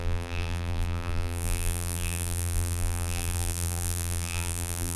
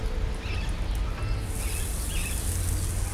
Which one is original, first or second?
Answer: second